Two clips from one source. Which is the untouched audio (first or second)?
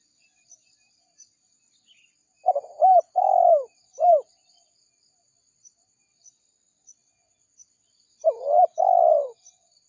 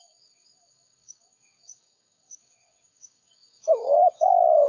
first